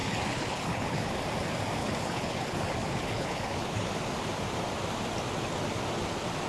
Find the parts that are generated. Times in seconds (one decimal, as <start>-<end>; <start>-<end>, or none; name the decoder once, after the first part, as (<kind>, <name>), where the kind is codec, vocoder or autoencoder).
0.0-1.1 (codec, HILCodec); 1.8-3.9